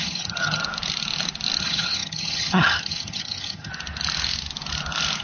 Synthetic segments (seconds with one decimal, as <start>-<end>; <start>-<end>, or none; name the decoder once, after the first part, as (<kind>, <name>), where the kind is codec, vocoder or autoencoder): 0.0-0.6 (vocoder, HiFi-GAN); 1.6-3.7